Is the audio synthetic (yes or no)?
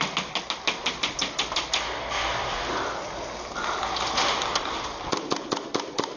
no